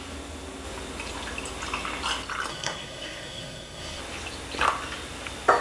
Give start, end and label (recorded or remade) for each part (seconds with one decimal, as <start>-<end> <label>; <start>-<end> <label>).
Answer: 0.0-2.5 recorded; 2.5-4.0 remade; 4.0-5.6 recorded

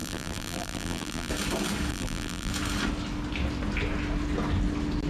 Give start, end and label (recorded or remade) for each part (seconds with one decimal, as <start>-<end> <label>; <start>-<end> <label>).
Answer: 0.0-1.3 remade; 1.3-1.9 recorded; 1.9-2.5 remade; 2.5-5.1 recorded

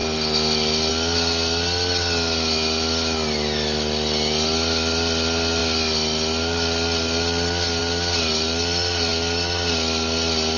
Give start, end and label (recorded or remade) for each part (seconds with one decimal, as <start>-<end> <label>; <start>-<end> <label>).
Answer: 0.0-10.6 recorded

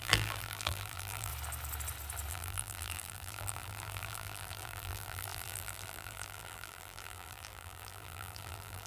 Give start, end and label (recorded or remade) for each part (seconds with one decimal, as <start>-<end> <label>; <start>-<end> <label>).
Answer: 0.0-1.3 remade; 1.3-2.3 recorded; 2.3-8.9 remade

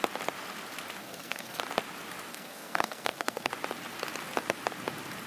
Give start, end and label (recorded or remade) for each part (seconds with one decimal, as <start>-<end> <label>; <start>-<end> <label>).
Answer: 0.0-1.0 recorded; 1.0-1.6 remade; 1.6-2.3 recorded; 2.3-3.5 remade; 3.5-5.3 recorded

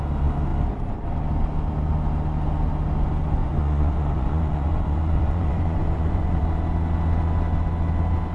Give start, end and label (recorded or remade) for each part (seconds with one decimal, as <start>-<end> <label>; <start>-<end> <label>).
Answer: 0.0-3.4 recorded; 3.4-6.4 remade; 6.4-8.3 recorded